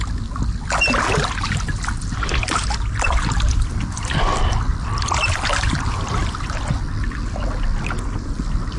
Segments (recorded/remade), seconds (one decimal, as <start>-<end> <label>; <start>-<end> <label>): 0.0-4.7 recorded; 4.7-6.8 remade; 6.8-8.8 recorded